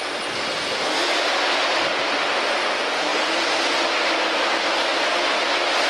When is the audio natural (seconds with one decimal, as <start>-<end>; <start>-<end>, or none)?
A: 0.0-5.9